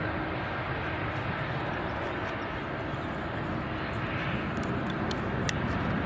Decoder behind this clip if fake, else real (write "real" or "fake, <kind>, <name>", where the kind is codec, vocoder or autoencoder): real